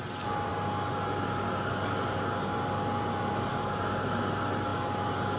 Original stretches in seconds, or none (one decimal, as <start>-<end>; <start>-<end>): 0.0-5.4